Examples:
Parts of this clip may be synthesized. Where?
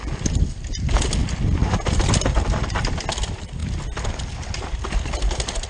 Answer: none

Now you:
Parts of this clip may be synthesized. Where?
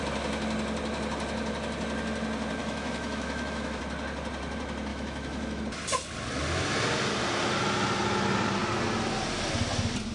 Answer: 2.6-3.8 (autoencoder, DAC-VAE); 4.9-5.6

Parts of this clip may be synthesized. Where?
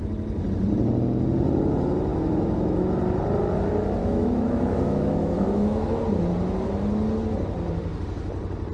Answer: 2.1-2.8 (autoencoder, DAC-VAE); 4.0-6.0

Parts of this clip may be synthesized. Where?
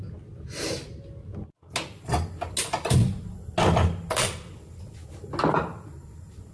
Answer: none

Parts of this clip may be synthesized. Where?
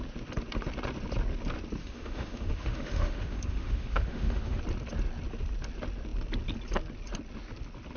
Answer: 1.8-4.6 (autoencoder, DAC-VAE)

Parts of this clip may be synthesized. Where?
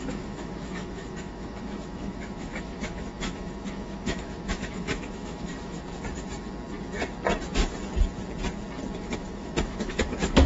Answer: 0.0-5.8 (autoencoder, DAC-VAE); 9.0-10.5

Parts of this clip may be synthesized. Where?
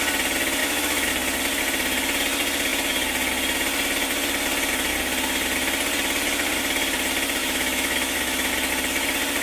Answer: 0.6-1.1 (autoencoder, DAC-VAE); 7.4-8.5